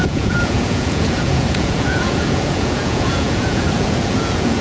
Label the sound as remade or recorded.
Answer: remade